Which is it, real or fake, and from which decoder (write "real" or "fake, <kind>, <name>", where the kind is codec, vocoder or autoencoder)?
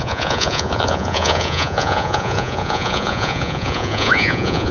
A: fake, vocoder, Vocos